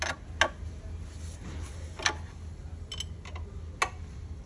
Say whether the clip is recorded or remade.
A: recorded